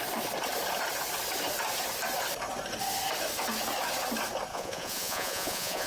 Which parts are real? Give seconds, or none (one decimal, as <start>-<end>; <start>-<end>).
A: 0.0-4.5